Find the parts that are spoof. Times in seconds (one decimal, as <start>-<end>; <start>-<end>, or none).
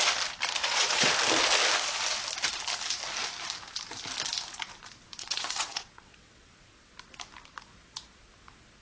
0.6-1.1; 5.2-6.5